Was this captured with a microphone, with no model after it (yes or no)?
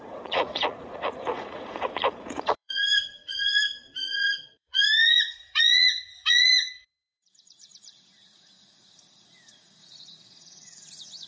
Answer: no